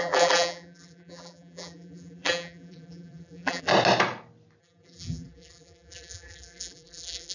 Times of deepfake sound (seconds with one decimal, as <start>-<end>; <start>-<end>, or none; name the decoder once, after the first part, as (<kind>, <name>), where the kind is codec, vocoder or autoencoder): 0.0-3.7 (vocoder, BigVGAN v2); 4.6-7.3